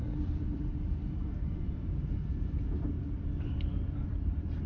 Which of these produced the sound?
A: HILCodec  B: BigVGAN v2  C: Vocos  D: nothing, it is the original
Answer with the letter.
B